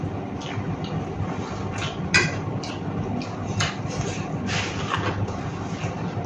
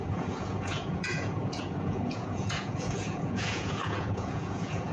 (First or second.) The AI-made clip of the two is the second